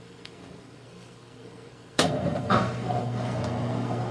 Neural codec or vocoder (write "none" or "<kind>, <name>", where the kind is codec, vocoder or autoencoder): codec, SNAC